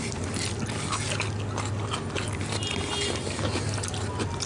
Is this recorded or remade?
recorded